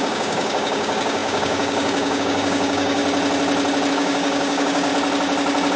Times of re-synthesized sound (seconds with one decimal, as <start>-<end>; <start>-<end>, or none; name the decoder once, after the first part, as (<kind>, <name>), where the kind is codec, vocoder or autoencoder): 0.0-3.0 (codec, DAC); 3.9-4.9